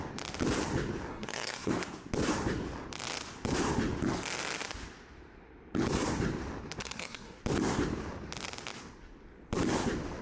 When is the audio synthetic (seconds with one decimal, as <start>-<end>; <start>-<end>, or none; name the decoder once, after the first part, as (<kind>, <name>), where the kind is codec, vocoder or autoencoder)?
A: 1.1-1.7 (codec, SNAC); 6.8-7.4